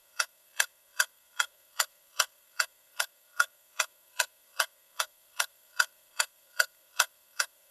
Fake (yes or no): yes